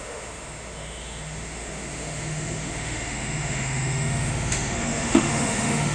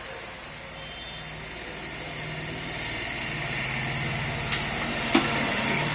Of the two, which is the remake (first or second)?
first